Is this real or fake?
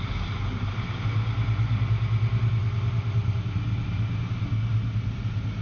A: real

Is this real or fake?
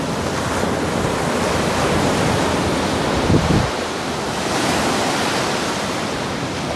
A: real